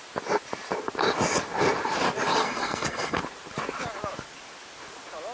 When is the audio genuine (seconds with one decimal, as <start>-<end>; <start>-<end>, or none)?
0.0-2.4; 3.2-5.3